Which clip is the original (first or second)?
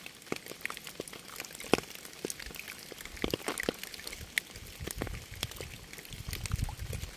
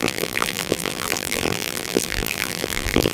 first